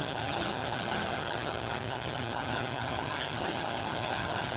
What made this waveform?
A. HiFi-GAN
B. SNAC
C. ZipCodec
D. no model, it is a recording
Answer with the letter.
A